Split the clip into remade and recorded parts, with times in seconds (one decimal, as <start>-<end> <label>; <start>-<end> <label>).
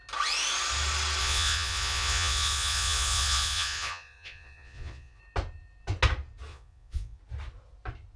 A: 0.0-1.2 recorded; 1.2-5.2 remade; 5.2-6.5 recorded; 6.5-7.2 remade; 7.2-8.2 recorded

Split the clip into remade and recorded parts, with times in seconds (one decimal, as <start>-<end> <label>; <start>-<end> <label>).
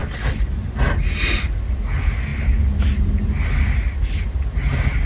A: 0.0-5.1 recorded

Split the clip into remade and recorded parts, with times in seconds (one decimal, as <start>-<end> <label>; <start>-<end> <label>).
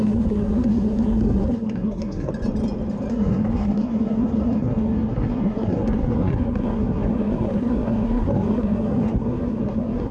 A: 0.0-2.3 remade; 2.3-3.1 recorded; 3.1-10.1 remade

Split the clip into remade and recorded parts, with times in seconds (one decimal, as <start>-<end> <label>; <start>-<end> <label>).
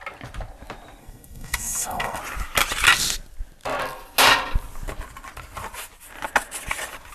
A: 0.0-1.0 recorded; 1.0-2.2 remade; 2.2-7.1 recorded